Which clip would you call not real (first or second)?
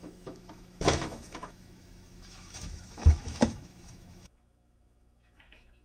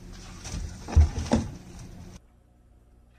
first